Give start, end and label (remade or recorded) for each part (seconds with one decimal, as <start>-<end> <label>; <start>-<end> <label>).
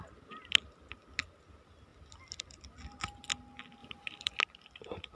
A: 0.0-3.8 recorded; 3.8-4.4 remade; 4.4-5.2 recorded